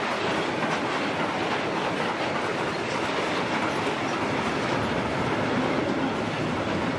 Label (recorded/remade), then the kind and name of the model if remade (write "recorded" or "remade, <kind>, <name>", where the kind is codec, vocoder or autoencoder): recorded